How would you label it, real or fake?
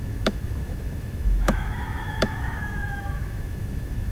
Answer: fake